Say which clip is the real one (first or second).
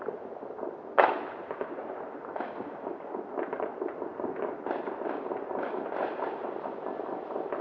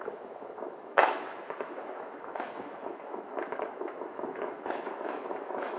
first